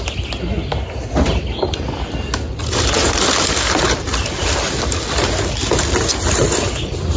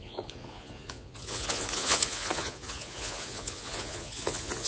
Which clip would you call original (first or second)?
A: first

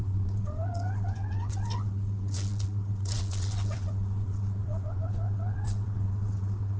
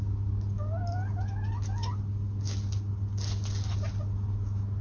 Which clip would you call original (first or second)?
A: second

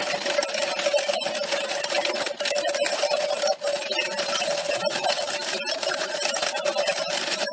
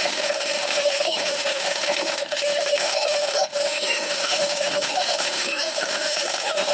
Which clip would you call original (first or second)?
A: first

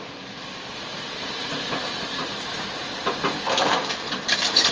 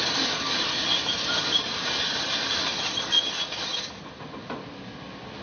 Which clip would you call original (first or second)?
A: second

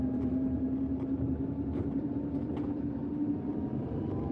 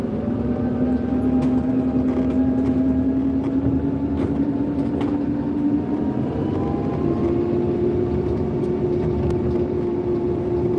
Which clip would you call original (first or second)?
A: second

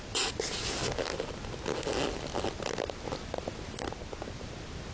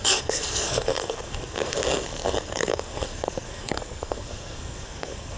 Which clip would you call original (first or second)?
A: first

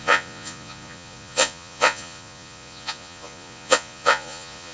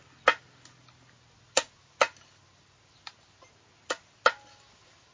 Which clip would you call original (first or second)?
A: second